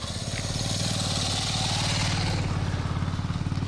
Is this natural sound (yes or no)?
yes